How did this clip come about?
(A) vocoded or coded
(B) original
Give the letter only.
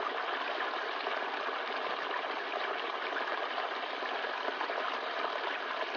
B